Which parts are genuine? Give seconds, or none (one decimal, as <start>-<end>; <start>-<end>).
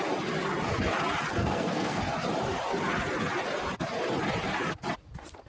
0.0-1.4; 2.0-5.5